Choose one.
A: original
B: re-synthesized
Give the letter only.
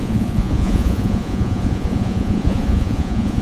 B